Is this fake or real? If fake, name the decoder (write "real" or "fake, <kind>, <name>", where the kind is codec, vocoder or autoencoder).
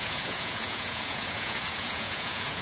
fake, vocoder, Vocos